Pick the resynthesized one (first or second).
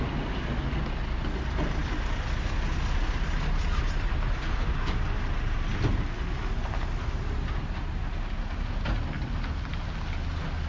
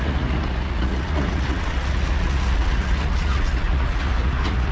second